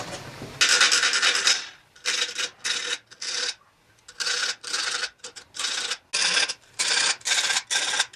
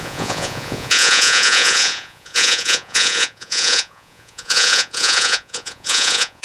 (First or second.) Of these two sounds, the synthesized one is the second